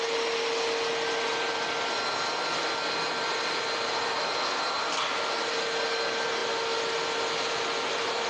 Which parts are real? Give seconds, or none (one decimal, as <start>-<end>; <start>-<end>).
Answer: 0.0-8.3